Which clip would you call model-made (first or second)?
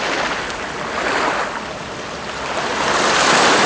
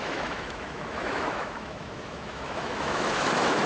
second